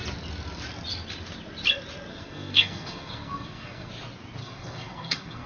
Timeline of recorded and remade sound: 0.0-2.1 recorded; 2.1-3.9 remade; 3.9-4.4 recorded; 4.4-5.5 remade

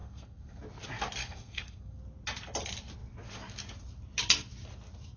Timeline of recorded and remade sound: 0.0-0.6 remade; 0.6-1.2 recorded; 1.2-2.0 remade; 2.0-5.2 recorded